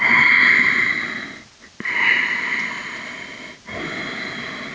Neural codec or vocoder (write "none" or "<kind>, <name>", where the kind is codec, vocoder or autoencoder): none